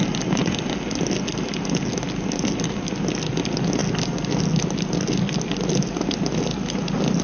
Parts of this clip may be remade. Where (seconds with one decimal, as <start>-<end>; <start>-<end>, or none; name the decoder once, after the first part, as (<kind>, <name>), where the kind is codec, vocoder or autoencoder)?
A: none

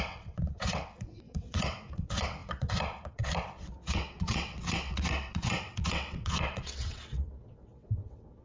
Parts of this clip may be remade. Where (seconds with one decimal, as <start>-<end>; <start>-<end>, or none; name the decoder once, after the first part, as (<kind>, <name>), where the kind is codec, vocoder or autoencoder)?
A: 0.0-8.4 (vocoder, WaveNeXt)

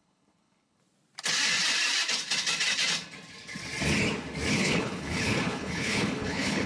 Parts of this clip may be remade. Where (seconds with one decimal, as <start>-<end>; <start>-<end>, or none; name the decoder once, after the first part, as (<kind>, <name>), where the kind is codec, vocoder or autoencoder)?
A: 0.0-0.8 (codec, HILCodec); 4.5-6.7